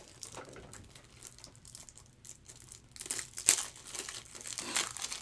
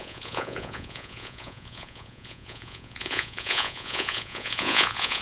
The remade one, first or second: second